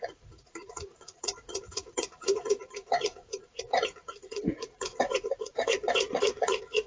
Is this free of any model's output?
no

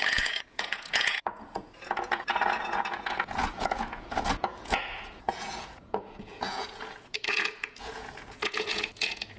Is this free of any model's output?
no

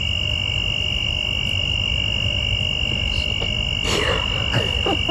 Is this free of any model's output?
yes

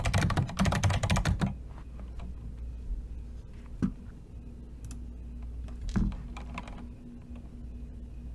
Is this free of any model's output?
yes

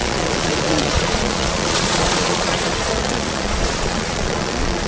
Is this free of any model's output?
no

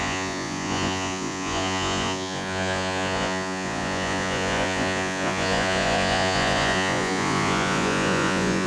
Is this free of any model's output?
no